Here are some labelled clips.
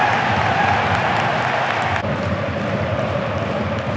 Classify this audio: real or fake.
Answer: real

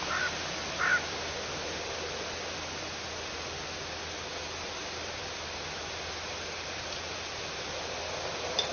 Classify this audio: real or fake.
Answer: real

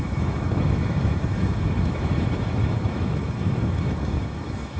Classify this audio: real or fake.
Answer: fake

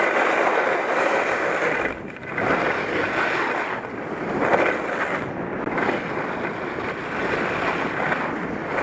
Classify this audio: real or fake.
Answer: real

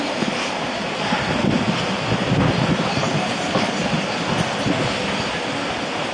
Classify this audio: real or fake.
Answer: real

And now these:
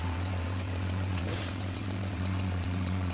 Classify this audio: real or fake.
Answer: fake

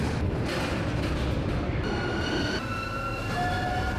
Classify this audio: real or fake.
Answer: real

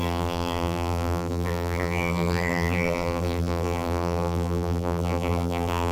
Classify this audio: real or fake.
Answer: fake